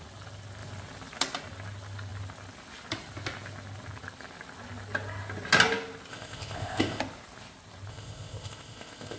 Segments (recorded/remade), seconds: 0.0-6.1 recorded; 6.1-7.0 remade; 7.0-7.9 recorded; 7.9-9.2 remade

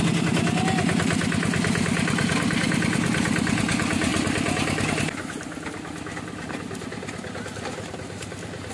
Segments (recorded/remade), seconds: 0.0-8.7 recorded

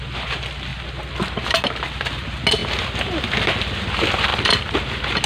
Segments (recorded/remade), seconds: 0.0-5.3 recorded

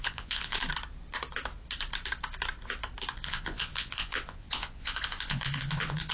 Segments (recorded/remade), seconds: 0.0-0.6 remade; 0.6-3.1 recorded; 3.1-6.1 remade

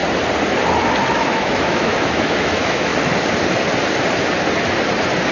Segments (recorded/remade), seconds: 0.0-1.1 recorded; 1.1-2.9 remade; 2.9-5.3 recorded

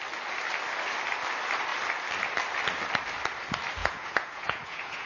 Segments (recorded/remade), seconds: 0.0-3.8 recorded; 3.8-5.1 remade

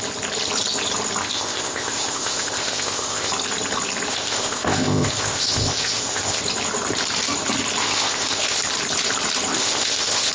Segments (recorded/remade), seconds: 0.0-1.2 recorded; 1.2-3.3 remade; 3.3-4.1 recorded; 4.1-6.4 remade; 6.4-7.8 recorded; 7.8-8.6 remade; 8.6-9.6 recorded; 9.6-10.3 remade